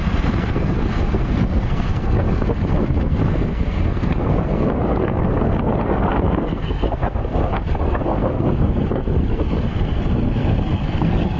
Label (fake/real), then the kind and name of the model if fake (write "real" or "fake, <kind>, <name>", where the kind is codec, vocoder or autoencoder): fake, codec, SNAC